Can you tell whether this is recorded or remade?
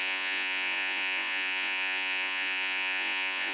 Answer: remade